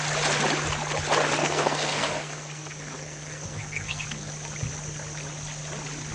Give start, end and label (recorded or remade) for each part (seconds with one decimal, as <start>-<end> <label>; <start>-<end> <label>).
0.0-1.4 recorded; 1.4-4.3 remade; 4.3-6.1 recorded